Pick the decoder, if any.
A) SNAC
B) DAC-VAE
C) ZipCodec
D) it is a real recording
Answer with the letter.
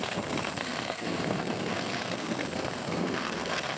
A